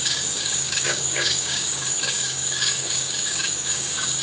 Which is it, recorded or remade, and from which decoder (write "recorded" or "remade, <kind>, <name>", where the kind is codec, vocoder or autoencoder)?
remade, codec, DAC